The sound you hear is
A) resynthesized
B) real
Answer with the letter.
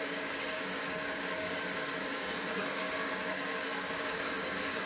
A